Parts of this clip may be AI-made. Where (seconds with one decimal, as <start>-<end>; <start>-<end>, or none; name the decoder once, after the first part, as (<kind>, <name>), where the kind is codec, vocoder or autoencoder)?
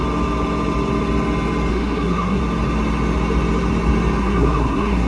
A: 1.7-2.4 (codec, SNAC); 4.2-5.1